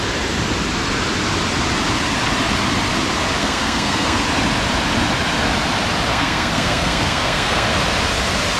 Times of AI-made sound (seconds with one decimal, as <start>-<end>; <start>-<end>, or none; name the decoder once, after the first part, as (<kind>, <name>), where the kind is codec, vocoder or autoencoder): 3.4-4.2 (codec, SNAC); 6.1-7.7